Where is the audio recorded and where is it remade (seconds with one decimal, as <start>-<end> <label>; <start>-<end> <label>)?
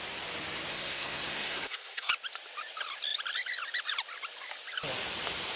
0.0-0.7 recorded; 0.7-2.1 remade; 2.1-5.6 recorded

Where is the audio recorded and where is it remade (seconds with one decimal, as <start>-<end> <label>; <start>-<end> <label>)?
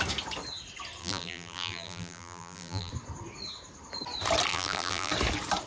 0.0-1.0 recorded; 1.0-2.9 remade; 2.9-4.5 recorded; 4.5-5.1 remade; 5.1-5.7 recorded